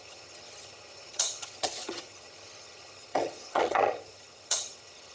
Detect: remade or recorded remade